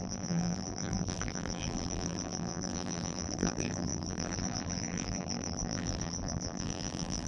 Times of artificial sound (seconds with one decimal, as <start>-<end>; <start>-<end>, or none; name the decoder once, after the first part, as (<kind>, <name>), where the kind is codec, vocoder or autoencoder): 0.0-7.3 (vocoder, BigVGAN v2)